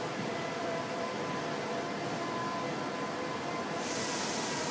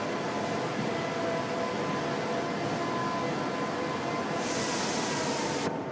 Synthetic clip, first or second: first